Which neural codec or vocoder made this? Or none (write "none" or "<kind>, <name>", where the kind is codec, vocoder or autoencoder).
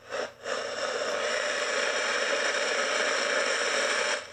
vocoder, BigVGAN v2